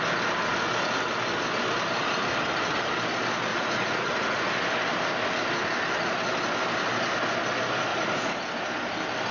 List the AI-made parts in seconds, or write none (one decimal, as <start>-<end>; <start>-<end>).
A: 3.5-4.4; 7.9-8.4